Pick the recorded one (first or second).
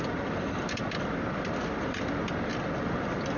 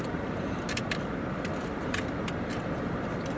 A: first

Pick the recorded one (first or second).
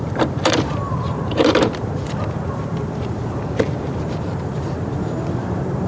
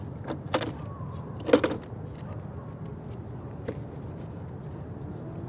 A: second